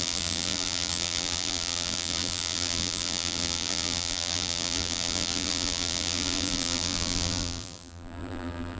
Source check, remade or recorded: remade